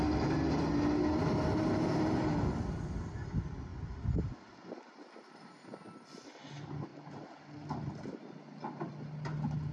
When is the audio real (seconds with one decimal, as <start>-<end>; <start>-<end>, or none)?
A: 0.0-9.7